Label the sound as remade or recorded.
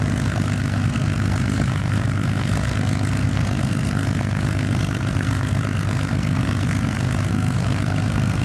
remade